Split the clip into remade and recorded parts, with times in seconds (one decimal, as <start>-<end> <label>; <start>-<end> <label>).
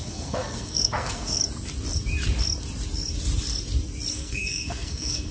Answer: 0.0-1.4 remade; 1.4-4.1 recorded; 4.1-5.3 remade